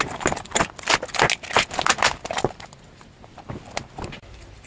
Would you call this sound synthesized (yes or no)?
no